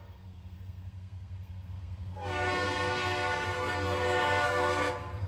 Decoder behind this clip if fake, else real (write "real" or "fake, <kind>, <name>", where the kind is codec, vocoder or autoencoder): fake, codec, SNAC